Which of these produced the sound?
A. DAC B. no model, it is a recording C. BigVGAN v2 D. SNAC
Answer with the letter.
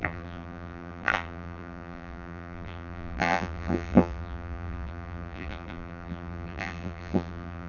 C